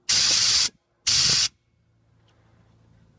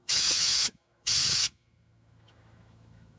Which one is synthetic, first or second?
second